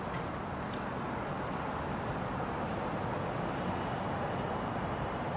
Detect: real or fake real